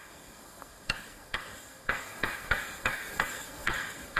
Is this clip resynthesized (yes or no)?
yes